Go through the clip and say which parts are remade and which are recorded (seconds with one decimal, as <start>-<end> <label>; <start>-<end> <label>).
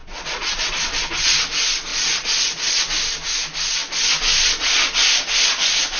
0.0-0.7 remade; 0.7-1.9 recorded; 1.9-2.8 remade; 2.8-6.0 recorded